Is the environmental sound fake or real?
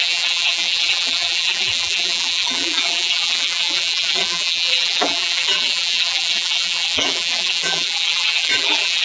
fake